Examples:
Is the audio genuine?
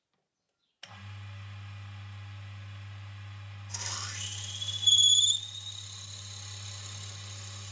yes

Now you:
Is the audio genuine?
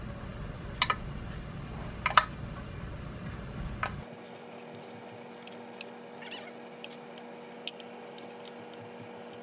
yes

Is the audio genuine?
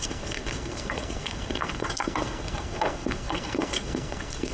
no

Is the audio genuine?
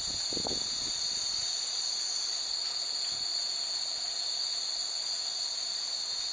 yes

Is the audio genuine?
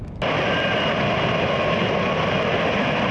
yes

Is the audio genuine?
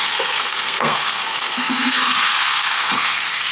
no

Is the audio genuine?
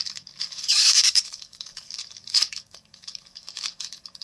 no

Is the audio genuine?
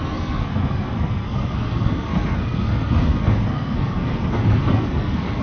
no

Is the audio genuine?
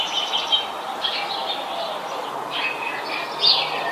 yes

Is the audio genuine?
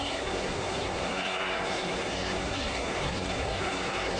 no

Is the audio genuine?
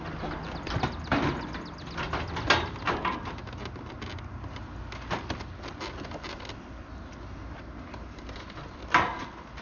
yes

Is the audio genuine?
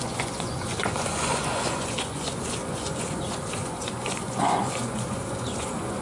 no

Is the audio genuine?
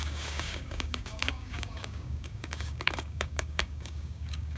no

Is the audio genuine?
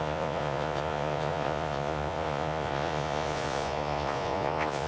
no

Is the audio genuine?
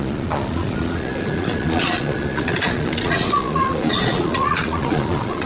no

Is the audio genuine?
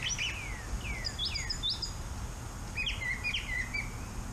yes